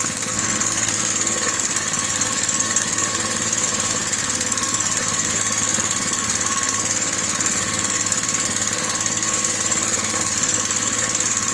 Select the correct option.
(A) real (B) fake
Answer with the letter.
B